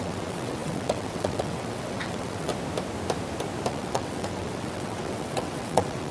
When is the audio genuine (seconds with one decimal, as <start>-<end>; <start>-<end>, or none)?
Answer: 2.5-3.7